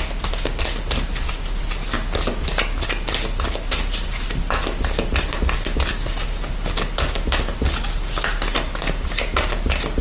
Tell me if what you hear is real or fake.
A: real